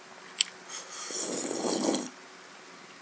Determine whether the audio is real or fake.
real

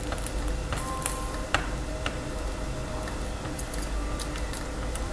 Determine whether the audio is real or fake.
fake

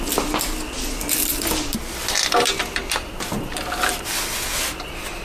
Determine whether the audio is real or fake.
real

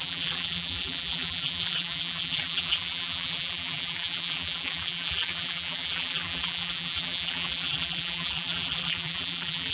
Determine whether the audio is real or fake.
fake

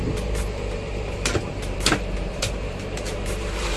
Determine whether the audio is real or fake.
fake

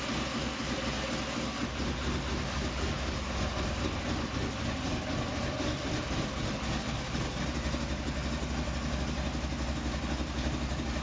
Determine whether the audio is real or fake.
real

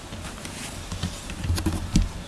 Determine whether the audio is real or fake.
real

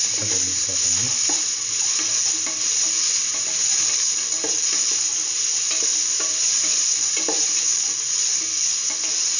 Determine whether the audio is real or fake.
fake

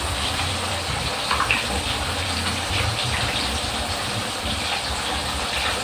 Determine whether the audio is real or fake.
fake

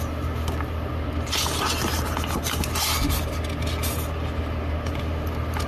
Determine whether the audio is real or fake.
real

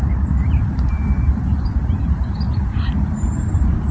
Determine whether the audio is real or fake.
fake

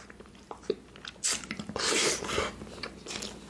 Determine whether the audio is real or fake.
real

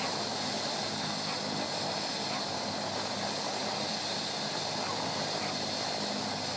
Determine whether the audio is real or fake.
real